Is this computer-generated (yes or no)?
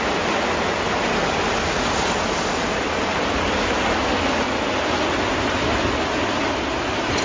no